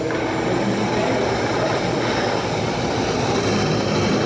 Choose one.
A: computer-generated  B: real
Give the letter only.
B